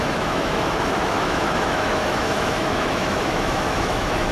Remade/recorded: remade